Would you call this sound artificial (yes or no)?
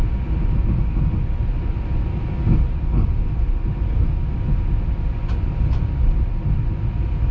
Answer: no